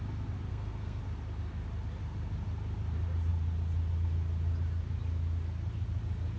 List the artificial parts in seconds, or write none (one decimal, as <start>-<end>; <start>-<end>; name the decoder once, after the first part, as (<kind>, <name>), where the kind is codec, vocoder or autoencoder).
0.5-1.0 (codec, SNAC)